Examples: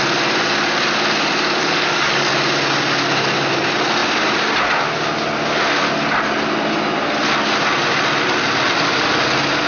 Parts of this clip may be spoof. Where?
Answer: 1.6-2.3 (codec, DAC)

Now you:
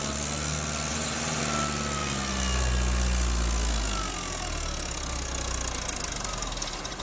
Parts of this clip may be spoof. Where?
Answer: 0.9-1.4 (vocoder, BigVGAN v2)

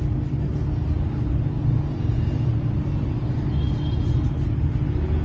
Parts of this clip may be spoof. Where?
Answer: none

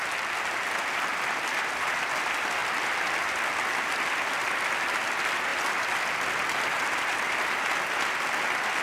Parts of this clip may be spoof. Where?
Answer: none

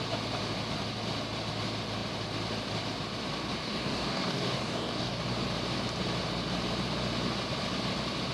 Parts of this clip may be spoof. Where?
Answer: 3.6-5.2 (codec, DAC)